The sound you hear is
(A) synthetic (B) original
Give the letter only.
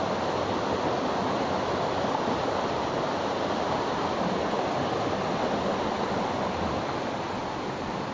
B